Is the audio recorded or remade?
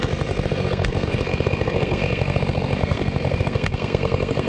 remade